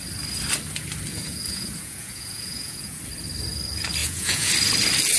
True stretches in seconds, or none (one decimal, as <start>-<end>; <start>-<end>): 0.0-1.1; 3.0-4.0; 4.5-5.2